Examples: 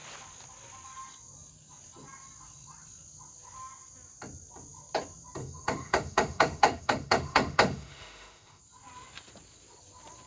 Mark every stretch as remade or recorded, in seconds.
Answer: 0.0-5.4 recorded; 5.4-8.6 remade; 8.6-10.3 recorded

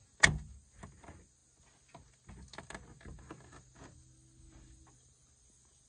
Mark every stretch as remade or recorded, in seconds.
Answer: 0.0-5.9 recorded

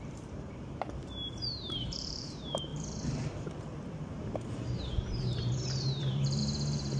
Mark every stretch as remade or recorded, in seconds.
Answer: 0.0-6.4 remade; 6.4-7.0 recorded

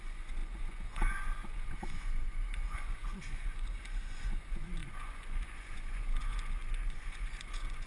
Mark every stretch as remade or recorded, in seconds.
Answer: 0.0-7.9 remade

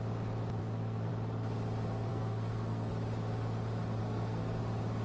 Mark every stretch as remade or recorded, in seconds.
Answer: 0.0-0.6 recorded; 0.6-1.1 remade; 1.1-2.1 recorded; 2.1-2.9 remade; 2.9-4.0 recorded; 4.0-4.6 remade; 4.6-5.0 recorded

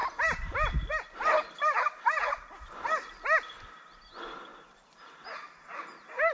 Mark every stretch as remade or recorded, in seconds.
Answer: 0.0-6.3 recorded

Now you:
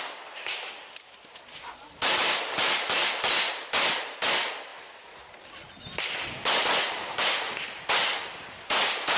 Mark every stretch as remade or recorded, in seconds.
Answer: 0.0-9.2 recorded